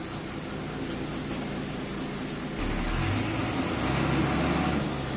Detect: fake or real real